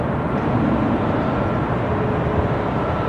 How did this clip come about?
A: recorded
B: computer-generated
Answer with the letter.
A